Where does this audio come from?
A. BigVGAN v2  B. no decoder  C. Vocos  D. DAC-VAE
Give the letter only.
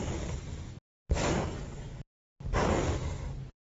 B